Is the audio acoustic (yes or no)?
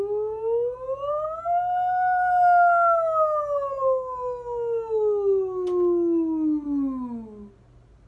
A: yes